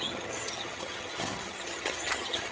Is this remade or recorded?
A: remade